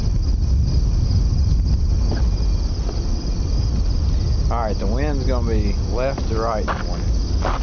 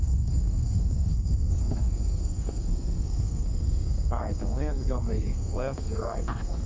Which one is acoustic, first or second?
first